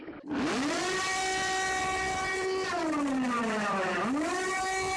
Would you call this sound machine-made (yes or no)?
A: no